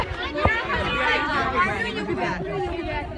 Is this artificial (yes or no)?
no